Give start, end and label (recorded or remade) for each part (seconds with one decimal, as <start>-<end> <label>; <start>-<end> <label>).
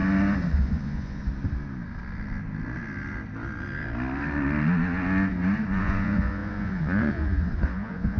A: 0.0-0.5 recorded; 0.5-1.2 remade; 1.2-5.8 recorded; 5.8-8.2 remade